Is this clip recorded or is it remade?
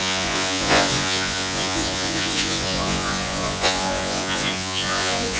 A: remade